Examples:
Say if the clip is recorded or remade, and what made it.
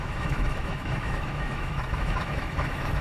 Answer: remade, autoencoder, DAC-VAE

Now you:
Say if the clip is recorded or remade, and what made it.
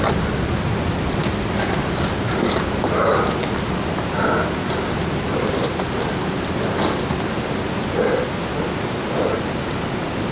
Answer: recorded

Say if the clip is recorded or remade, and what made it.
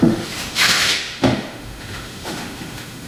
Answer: remade, autoencoder, DAC-VAE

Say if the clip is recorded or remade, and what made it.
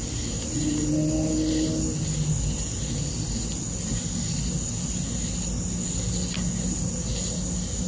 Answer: recorded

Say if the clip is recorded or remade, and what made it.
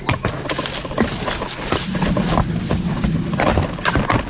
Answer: recorded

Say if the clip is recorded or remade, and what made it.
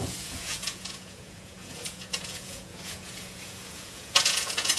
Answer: remade, vocoder, Vocos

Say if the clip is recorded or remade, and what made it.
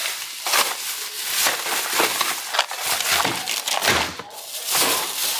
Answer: recorded